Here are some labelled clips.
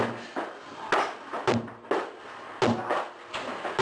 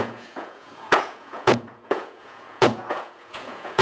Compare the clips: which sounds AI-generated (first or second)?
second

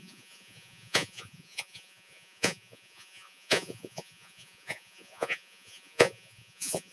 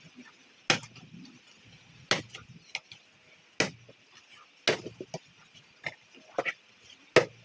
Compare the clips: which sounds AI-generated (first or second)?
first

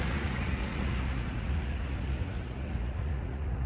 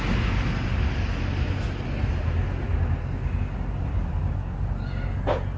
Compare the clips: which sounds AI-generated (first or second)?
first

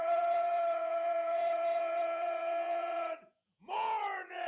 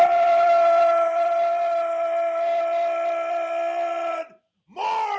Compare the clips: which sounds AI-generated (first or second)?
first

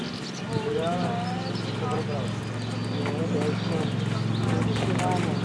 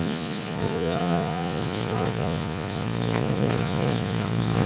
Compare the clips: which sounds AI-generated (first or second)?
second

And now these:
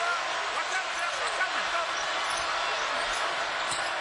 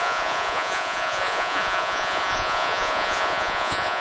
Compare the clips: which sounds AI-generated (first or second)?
second